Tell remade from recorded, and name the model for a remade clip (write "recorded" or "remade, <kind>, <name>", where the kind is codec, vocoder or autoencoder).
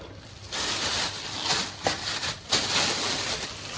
recorded